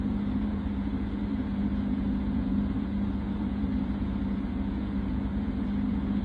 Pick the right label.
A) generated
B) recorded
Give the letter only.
A